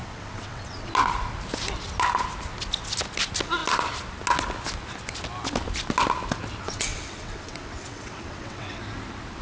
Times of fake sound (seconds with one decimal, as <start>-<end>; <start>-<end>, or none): 0.0-0.9; 6.6-8.8